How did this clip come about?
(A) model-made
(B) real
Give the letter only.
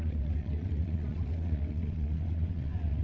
A